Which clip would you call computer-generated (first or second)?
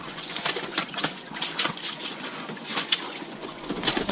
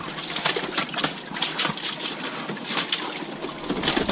first